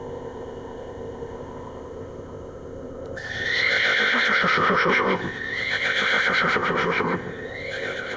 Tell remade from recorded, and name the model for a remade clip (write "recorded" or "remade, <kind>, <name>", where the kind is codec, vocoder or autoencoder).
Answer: remade, codec, ZipCodec